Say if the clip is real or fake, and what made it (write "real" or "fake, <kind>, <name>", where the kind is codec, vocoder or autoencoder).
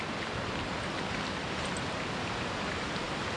fake, vocoder, BigVGAN v2